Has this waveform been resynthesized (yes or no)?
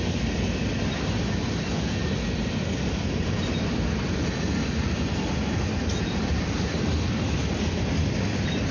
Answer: no